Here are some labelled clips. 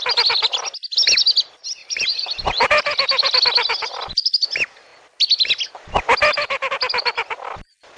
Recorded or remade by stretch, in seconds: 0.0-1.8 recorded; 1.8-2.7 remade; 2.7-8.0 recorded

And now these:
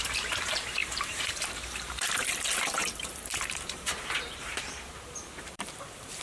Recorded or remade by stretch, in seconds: 0.0-6.2 remade

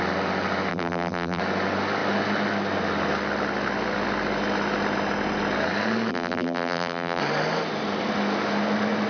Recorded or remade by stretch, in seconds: 0.0-0.7 recorded; 0.7-1.4 remade; 1.4-6.1 recorded; 6.1-7.2 remade; 7.2-9.1 recorded

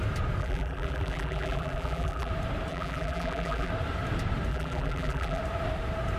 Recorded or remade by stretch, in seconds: 0.0-0.4 recorded; 0.4-2.3 remade; 2.3-2.7 recorded; 2.7-3.7 remade; 3.7-4.5 recorded; 4.5-5.4 remade; 5.4-6.2 recorded

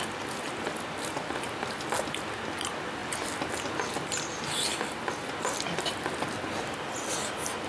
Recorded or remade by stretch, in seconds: 0.0-7.7 recorded

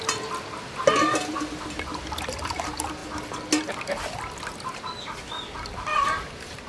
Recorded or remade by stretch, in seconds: 0.0-1.9 recorded; 1.9-2.6 remade; 2.6-5.9 recorded; 5.9-6.7 remade